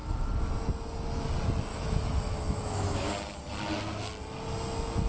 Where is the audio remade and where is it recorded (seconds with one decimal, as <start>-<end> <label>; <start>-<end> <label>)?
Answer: 0.0-0.5 remade; 0.5-1.7 recorded; 1.7-3.1 remade; 3.1-5.1 recorded